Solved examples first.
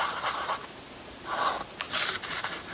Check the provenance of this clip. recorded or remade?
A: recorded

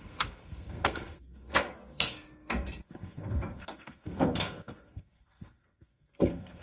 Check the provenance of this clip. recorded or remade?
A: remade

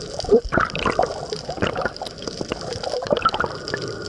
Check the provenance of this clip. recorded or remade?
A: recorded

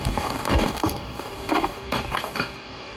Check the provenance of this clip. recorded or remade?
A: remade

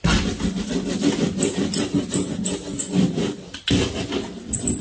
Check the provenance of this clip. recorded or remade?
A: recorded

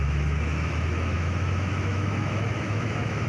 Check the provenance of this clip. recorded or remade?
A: remade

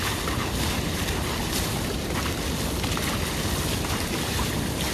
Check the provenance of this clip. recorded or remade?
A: recorded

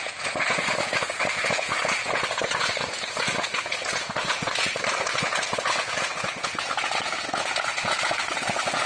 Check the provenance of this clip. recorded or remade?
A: remade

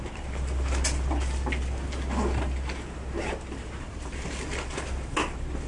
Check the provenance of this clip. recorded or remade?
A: recorded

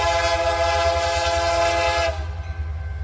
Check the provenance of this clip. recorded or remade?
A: recorded